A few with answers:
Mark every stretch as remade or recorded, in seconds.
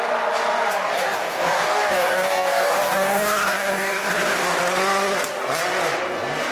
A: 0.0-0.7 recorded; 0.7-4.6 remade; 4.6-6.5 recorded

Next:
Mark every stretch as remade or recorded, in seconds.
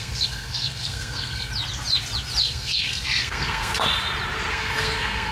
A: 0.0-1.5 remade; 1.5-2.4 recorded; 2.4-3.7 remade; 3.7-4.5 recorded; 4.5-5.3 remade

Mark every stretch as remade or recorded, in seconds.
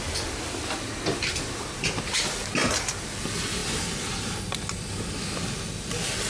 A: 0.0-6.3 recorded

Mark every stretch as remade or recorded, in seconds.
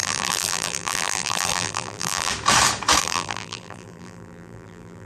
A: 0.0-2.3 remade; 2.3-3.0 recorded; 3.0-5.1 remade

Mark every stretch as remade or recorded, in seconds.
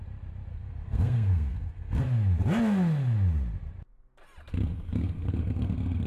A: 0.0-0.5 recorded; 0.5-2.0 remade; 2.0-4.5 recorded; 4.5-6.1 remade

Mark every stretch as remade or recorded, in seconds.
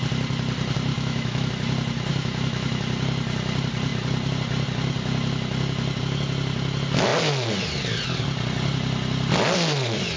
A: 0.0-0.9 recorded; 0.9-1.5 remade; 1.5-2.1 recorded; 2.1-2.8 remade; 2.8-10.2 recorded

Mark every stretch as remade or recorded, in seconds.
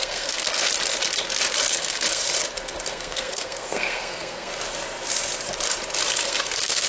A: 0.0-0.6 remade; 0.6-1.6 recorded; 1.6-2.2 remade; 2.2-2.9 recorded; 2.9-4.5 remade; 4.5-6.2 recorded; 6.2-6.9 remade